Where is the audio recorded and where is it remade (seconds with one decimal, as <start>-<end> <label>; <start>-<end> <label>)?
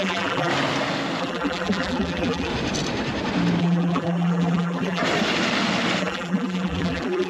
0.0-0.5 remade; 0.5-1.2 recorded; 1.2-2.5 remade; 2.5-3.6 recorded; 3.6-5.0 remade; 5.0-6.0 recorded; 6.0-7.3 remade